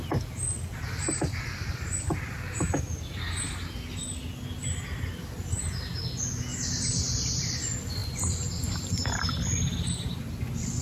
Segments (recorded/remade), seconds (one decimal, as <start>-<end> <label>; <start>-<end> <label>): 0.0-8.0 recorded; 8.0-9.2 remade; 9.2-10.8 recorded